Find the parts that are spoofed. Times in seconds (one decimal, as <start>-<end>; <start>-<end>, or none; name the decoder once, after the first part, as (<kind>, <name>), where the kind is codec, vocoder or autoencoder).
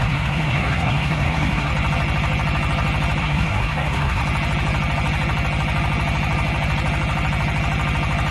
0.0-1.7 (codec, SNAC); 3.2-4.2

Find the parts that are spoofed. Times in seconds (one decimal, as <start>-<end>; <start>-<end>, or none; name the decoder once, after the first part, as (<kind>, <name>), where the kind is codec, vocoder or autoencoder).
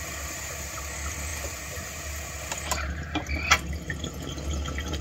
none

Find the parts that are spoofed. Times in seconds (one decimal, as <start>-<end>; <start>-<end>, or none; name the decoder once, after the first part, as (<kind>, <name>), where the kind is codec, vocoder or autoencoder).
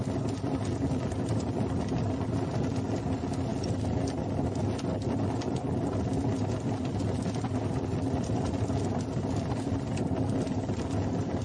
none